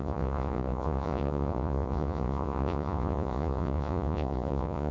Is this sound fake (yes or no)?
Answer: yes